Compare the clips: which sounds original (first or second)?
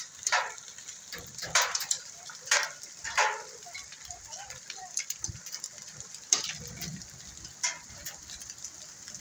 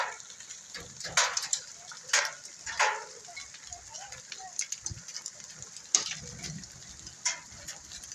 second